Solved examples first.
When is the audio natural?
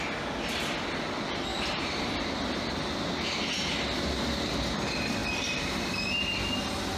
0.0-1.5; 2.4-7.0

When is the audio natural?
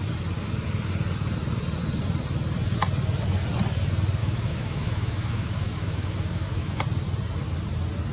0.0-4.2; 6.8-8.1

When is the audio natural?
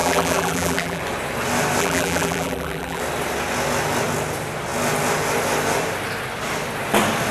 1.0-1.8; 3.0-7.3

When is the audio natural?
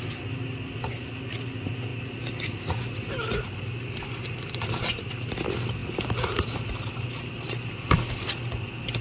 0.0-9.0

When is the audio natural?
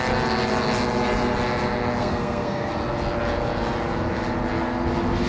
0.0-2.0; 2.7-5.3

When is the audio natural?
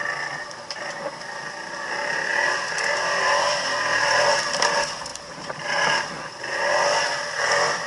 0.8-2.3; 2.9-7.9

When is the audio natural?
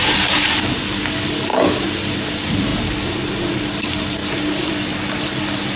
0.0-5.8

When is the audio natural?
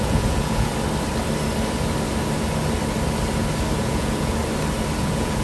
0.7-3.8; 4.4-5.0